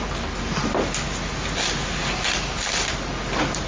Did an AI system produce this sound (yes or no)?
no